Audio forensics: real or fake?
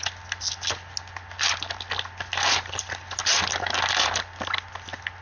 real